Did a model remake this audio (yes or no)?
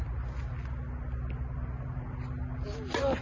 no